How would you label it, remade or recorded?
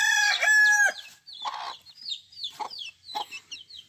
recorded